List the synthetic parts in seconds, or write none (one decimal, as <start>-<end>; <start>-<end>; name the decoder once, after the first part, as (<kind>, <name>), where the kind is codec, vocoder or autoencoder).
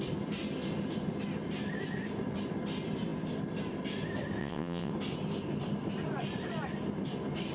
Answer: 4.4-4.9 (vocoder, WaveNeXt)